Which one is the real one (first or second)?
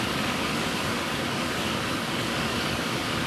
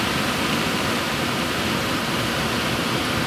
second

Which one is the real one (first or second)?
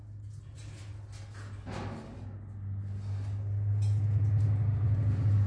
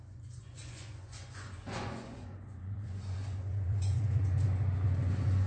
first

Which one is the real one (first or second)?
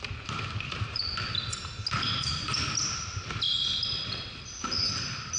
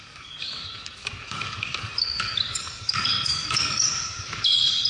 first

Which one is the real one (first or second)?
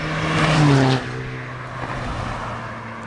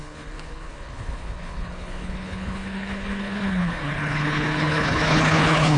first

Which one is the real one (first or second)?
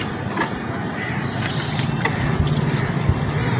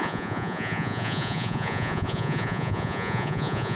first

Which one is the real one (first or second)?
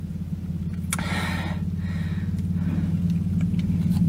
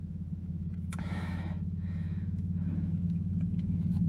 first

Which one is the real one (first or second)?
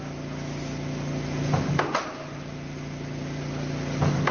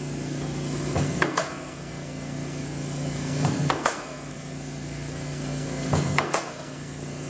first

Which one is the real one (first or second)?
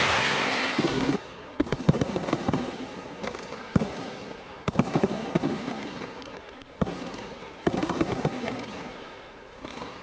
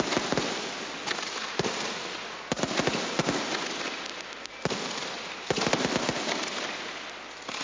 second